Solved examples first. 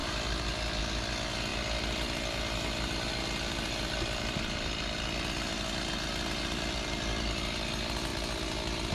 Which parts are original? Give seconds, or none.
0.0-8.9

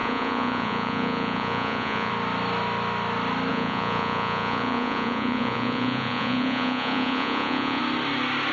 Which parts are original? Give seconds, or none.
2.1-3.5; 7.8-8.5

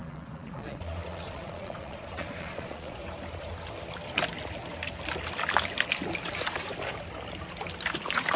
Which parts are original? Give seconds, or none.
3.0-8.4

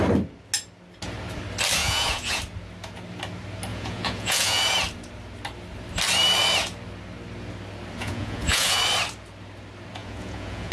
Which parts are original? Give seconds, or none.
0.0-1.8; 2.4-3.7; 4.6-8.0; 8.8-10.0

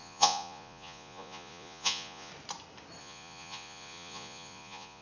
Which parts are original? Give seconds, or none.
2.3-3.0

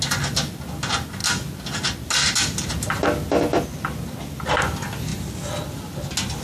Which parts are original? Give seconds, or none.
0.0-6.4